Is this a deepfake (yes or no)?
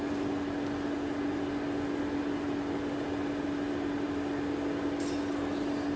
no